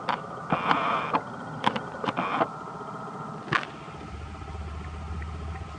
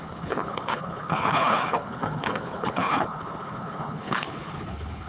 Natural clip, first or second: first